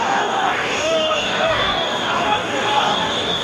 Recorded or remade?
remade